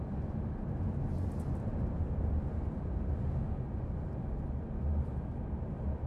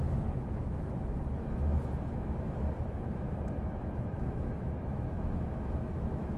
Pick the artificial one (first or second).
second